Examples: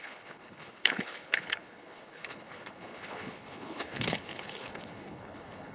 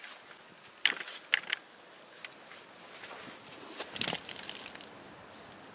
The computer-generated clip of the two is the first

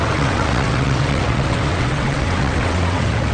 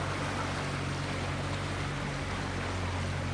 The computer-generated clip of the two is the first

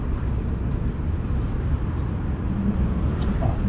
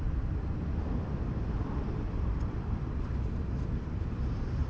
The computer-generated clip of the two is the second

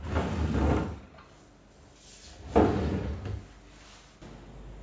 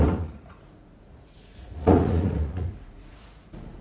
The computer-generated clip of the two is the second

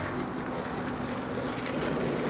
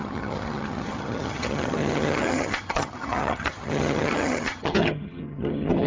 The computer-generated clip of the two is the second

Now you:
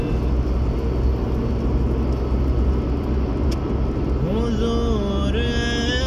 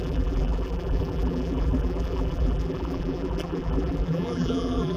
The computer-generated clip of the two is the second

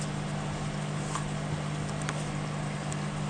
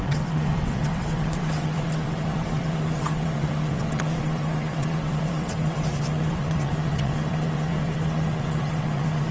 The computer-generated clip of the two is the second